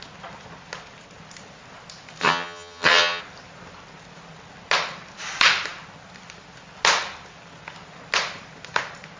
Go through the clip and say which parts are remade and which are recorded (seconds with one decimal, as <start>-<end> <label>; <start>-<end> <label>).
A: 0.0-2.2 recorded; 2.2-3.2 remade; 3.2-9.2 recorded